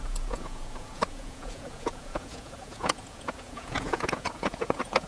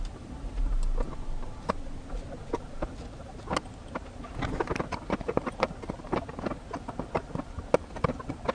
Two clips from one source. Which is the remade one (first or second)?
first